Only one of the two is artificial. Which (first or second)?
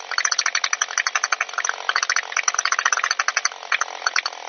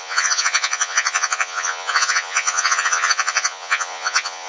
second